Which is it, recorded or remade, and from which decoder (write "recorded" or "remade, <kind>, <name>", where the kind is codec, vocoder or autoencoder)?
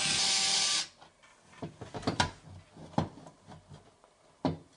recorded